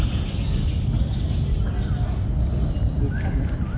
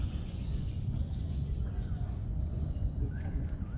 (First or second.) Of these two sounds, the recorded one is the first